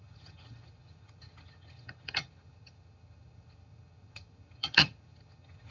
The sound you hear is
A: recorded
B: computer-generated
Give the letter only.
B